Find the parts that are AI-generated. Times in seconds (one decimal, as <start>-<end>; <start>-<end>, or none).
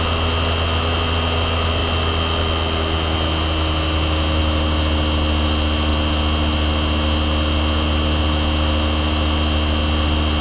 none